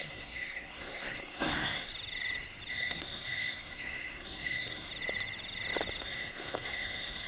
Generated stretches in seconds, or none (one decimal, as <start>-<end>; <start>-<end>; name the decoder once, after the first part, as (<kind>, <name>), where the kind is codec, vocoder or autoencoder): 0.0-1.9 (codec, SNAC); 2.7-4.9; 6.0-7.3